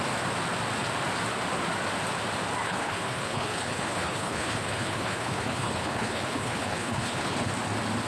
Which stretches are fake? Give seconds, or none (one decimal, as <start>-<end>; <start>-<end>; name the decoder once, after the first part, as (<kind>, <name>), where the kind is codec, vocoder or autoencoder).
2.6-7.5 (codec, HILCodec)